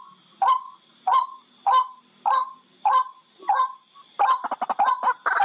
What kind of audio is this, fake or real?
real